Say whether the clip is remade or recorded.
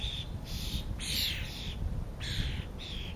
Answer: remade